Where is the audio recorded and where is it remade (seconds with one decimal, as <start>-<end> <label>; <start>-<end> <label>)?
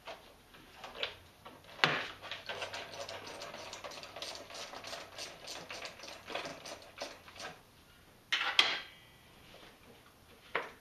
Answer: 0.0-10.8 recorded